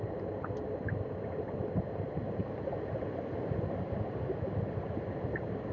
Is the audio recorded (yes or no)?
yes